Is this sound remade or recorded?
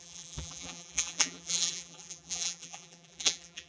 remade